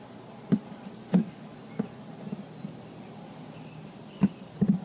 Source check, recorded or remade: recorded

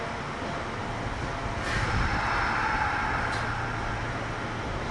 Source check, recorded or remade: recorded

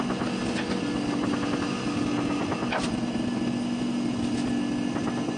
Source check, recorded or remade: recorded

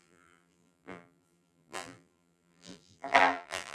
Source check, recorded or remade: remade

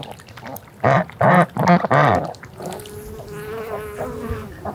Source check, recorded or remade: recorded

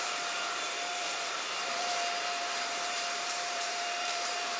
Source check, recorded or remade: remade